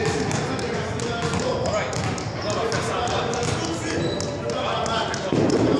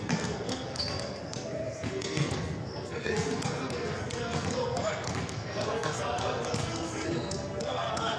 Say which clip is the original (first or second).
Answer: first